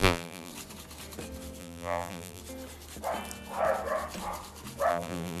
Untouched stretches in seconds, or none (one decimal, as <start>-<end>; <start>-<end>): 0.5-1.6; 2.4-4.9

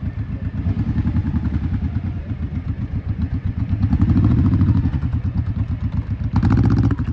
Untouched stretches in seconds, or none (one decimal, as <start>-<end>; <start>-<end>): 0.0-1.2; 5.5-7.1

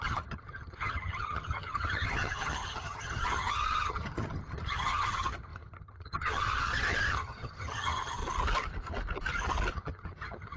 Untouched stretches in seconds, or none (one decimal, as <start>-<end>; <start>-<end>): 8.2-9.7

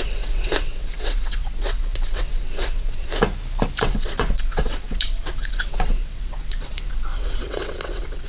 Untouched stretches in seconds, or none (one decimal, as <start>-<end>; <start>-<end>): 3.1-3.8